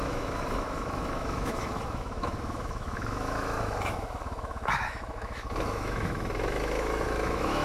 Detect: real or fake fake